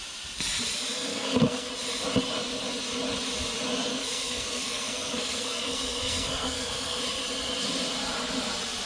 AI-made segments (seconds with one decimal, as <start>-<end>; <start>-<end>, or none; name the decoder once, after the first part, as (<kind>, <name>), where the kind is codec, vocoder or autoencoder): 1.1-1.7 (codec, SNAC); 3.9-7.0